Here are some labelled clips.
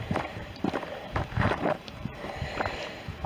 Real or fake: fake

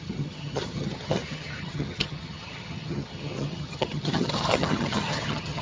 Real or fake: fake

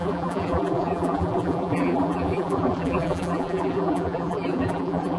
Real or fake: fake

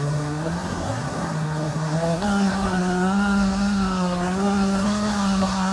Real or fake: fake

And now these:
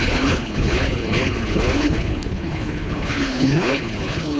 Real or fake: fake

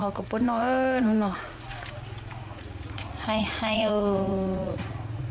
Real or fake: fake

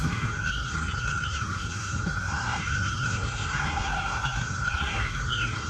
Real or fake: fake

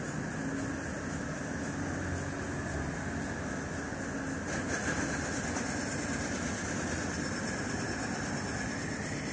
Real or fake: real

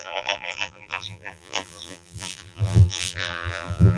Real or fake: fake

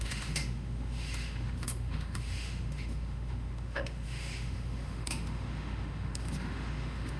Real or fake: fake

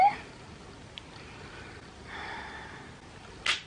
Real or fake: real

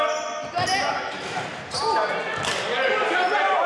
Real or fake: real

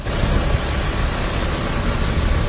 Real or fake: real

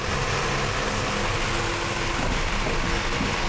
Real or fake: real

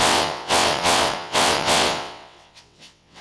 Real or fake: fake